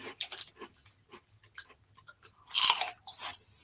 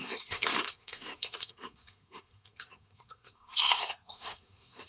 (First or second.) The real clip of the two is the first